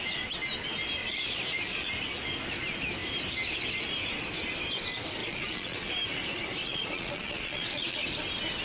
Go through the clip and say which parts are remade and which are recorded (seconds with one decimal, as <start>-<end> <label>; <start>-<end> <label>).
0.0-1.0 recorded; 1.0-1.9 remade; 1.9-5.2 recorded; 5.2-5.9 remade; 5.9-6.6 recorded; 6.6-8.0 remade; 8.0-8.6 recorded